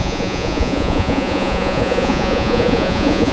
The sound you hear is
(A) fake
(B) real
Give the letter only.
A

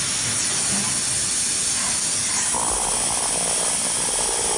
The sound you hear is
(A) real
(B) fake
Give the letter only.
A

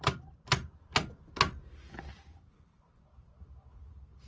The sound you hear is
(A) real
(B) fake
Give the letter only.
A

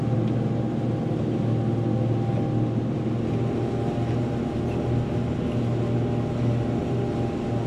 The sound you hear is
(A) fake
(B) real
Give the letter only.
B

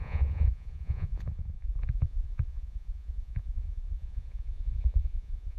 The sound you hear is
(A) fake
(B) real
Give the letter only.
A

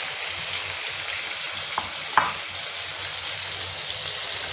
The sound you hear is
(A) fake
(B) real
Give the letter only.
B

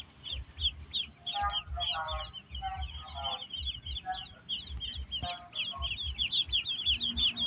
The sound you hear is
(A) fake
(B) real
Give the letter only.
B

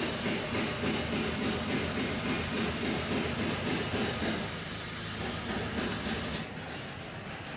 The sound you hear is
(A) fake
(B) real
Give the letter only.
B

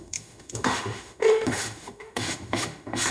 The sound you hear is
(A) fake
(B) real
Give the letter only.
A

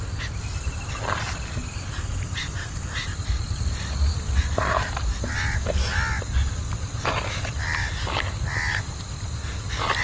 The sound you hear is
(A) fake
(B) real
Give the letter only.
B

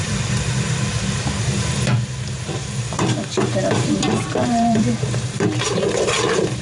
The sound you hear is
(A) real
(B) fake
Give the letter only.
B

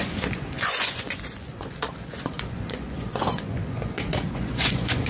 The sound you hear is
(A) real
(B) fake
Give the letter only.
B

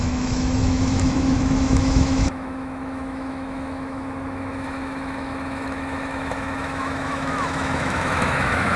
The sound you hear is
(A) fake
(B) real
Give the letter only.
A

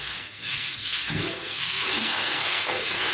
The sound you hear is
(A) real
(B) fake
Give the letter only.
B